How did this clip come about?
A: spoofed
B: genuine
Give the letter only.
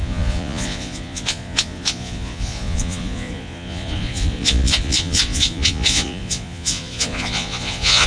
A